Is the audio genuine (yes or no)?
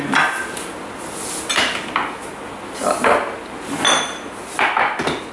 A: yes